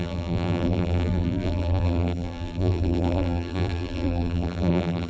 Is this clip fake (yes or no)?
yes